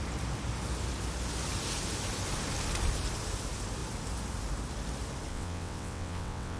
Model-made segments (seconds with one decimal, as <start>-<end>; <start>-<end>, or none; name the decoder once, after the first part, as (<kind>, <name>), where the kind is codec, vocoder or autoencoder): 5.3-6.6 (vocoder, WaveNeXt)

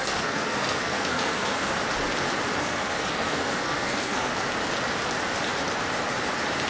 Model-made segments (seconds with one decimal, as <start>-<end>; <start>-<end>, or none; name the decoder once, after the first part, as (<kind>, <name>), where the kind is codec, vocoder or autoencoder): 0.0-1.7 (codec, SNAC); 2.6-4.3

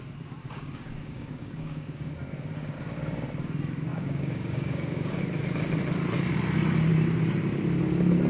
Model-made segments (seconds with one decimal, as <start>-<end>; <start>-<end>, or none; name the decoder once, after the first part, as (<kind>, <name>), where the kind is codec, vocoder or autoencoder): 0.4-2.1 (codec, DAC); 3.9-5.2